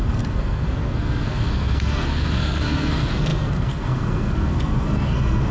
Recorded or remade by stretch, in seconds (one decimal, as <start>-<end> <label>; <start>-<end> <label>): 0.0-5.5 remade